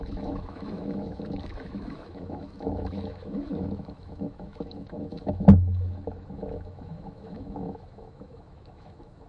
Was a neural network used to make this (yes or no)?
yes